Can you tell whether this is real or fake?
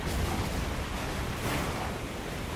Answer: real